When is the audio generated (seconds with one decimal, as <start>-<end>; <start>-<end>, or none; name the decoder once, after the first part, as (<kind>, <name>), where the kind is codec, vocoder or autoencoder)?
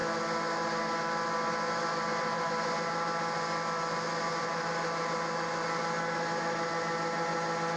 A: none